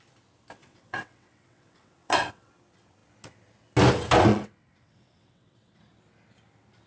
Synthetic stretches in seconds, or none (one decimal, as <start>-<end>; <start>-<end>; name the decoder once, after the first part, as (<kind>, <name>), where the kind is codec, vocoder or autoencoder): 0.6-2.5 (vocoder, WaveNeXt); 4.3-5.8